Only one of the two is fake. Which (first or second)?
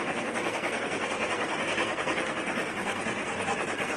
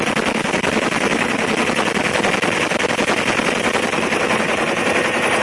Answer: first